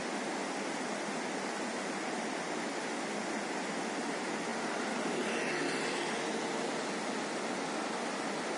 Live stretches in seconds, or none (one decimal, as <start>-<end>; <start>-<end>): 0.0-8.6